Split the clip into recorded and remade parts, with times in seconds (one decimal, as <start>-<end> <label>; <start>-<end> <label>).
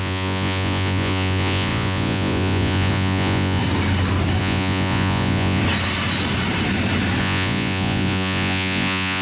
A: 0.0-3.6 remade; 3.6-4.4 recorded; 4.4-5.6 remade; 5.6-7.2 recorded; 7.2-9.2 remade